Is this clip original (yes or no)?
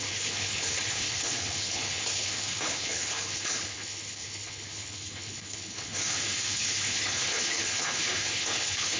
no